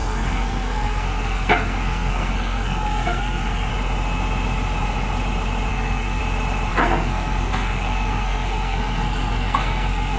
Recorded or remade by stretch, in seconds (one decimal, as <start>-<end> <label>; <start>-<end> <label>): 0.0-3.7 remade; 3.7-5.7 recorded; 5.7-6.2 remade; 6.2-6.7 recorded; 6.7-10.2 remade